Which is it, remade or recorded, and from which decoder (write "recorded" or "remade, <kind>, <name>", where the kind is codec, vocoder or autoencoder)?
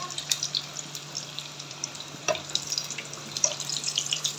remade, vocoder, BigVGAN v2